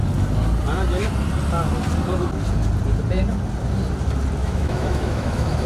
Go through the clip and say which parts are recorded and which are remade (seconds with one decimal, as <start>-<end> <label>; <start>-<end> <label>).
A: 0.0-4.4 recorded; 4.4-5.7 remade